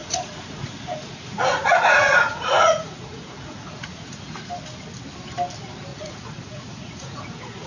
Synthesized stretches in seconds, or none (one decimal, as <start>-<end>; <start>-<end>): 0.0-4.5; 5.9-7.7